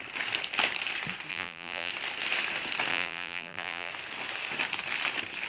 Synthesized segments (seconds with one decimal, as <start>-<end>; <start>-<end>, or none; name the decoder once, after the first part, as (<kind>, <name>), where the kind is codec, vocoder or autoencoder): 1.3-1.9 (vocoder, BigVGAN v2); 2.9-3.9